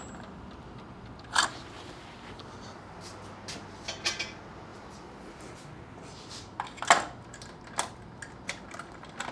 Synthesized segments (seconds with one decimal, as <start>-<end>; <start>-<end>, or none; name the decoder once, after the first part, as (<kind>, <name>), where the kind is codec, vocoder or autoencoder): 4.7-5.4 (vocoder, BigVGAN v2)